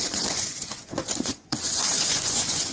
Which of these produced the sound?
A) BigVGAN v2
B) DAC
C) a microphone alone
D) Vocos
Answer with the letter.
D